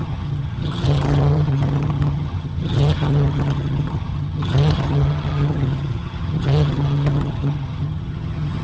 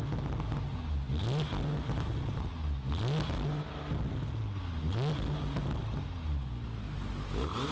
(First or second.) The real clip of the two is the second